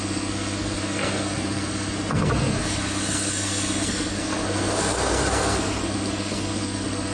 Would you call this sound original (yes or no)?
no